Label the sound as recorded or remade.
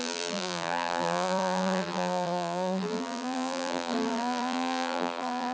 remade